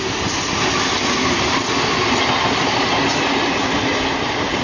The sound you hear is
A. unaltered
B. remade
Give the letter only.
A